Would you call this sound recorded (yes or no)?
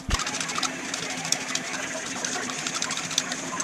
no